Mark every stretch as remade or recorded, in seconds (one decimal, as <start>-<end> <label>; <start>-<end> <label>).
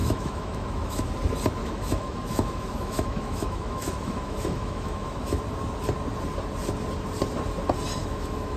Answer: 0.0-1.1 remade; 1.1-1.6 recorded; 1.6-5.4 remade; 5.4-8.0 recorded; 8.0-8.6 remade